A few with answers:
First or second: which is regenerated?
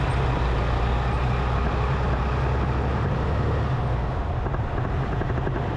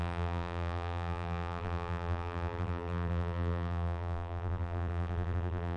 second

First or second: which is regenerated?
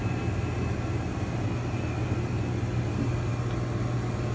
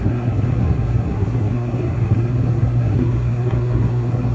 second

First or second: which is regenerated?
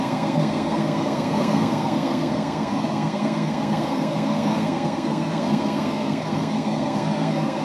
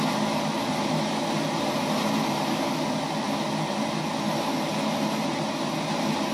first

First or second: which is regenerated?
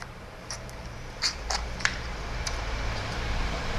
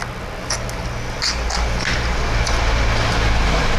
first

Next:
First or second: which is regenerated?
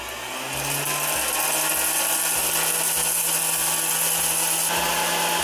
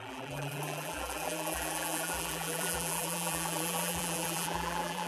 second